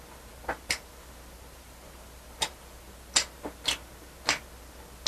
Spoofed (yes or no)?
no